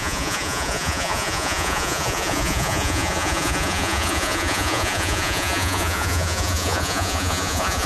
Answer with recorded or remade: remade